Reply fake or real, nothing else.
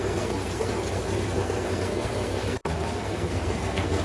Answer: fake